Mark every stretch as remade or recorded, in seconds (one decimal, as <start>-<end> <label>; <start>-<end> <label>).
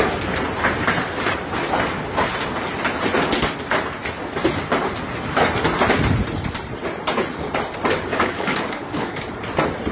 0.0-8.1 recorded; 8.1-9.2 remade; 9.2-9.9 recorded